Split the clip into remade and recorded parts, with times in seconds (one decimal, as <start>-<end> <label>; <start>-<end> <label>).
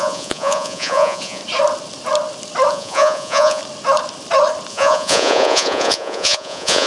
0.0-1.4 remade; 1.4-2.7 recorded; 2.7-3.6 remade; 3.6-4.7 recorded; 4.7-6.9 remade